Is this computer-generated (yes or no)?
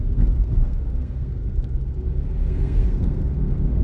yes